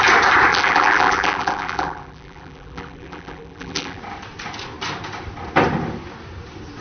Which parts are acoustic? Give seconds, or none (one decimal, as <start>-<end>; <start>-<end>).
0.0-0.5; 4.0-6.8